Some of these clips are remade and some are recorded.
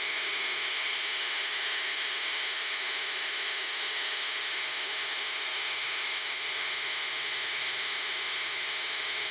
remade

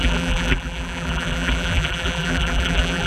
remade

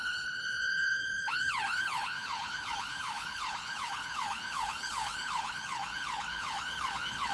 remade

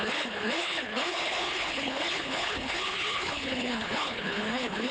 remade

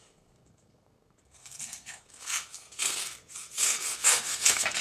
remade